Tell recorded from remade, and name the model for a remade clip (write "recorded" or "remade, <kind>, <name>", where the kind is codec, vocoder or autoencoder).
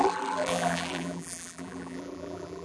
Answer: remade, vocoder, BigVGAN v2